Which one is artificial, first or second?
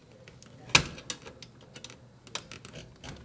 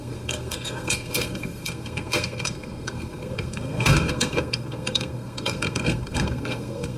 second